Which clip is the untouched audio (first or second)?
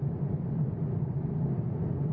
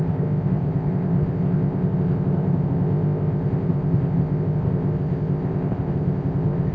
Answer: first